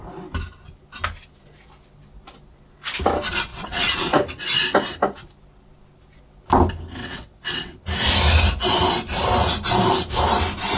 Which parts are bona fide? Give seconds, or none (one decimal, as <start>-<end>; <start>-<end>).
0.0-3.5; 4.2-7.0; 7.7-10.8